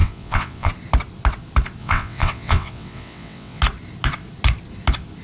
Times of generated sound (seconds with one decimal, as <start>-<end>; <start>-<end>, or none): 0.0-0.7; 1.8-3.6